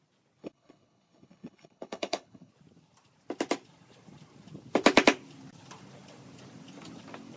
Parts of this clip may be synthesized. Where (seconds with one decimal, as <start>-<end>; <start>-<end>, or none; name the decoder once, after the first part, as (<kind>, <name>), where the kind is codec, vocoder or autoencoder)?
0.4-2.5 (codec, HILCodec)